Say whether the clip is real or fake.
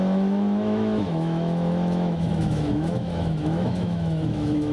fake